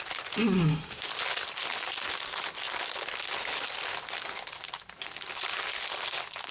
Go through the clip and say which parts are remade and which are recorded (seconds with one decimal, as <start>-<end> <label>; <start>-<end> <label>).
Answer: 0.0-6.5 recorded